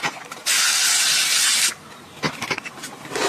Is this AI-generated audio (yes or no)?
no